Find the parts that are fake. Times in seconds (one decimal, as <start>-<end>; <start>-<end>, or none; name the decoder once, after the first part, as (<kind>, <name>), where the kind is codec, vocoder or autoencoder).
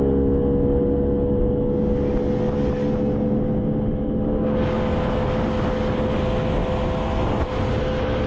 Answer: none